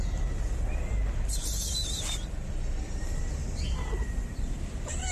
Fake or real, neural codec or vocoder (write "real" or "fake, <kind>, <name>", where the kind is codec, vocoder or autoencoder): real